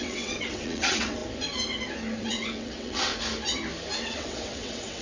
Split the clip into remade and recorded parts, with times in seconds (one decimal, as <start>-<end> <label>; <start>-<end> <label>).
0.0-1.2 remade; 1.2-2.2 recorded; 2.2-3.1 remade; 3.1-4.0 recorded; 4.0-5.0 remade